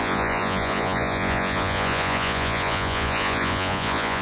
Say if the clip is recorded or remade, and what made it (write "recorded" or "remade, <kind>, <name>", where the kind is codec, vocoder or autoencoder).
remade, vocoder, Vocos